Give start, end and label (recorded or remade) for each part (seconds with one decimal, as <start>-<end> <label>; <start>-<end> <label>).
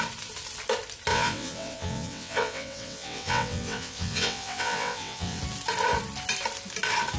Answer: 0.0-1.1 recorded; 1.1-5.4 remade; 5.4-7.2 recorded